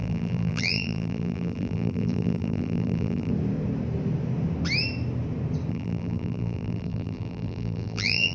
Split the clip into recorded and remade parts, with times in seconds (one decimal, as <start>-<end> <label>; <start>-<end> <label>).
0.0-3.3 remade; 3.3-5.7 recorded; 5.7-8.3 remade